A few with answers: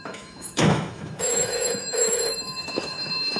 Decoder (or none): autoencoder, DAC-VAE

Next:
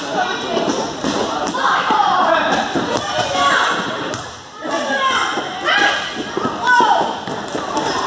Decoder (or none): none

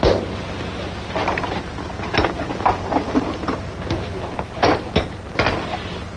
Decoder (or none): none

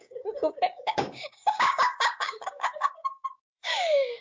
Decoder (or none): codec, DAC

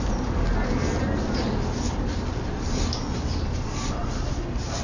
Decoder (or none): vocoder, BigVGAN v2